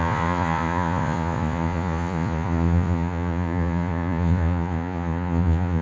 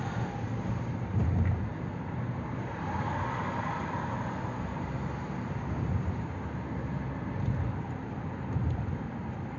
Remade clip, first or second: first